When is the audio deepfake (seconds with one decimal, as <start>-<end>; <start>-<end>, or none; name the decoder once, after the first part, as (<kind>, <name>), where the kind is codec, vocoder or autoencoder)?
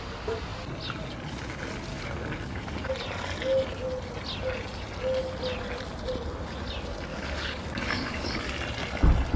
1.9-2.9 (codec, DAC); 7.1-8.4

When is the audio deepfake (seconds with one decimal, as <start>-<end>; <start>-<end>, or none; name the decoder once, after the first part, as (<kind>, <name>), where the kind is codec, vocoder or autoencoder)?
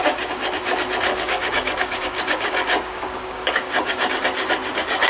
1.1-4.1 (codec, DAC)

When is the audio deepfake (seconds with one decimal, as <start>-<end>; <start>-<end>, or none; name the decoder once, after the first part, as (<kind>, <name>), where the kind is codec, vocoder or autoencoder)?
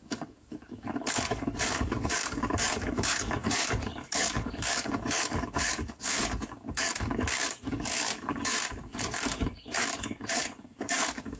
0.0-11.4 (codec, DAC)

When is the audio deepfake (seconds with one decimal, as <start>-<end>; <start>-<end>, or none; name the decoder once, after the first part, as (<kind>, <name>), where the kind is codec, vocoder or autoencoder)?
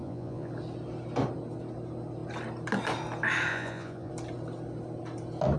0.0-0.5 (vocoder, Vocos); 3.5-4.1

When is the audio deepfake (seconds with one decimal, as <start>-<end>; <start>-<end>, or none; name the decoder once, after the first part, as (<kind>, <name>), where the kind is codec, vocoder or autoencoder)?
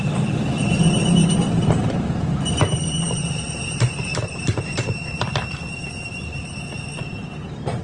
0.0-6.4 (vocoder, BigVGAN v2); 7.1-7.8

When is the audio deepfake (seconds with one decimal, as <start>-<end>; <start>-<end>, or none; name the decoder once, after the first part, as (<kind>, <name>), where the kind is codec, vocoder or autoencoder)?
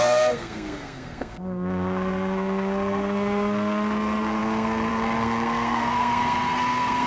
0.0-7.1 (codec, SNAC)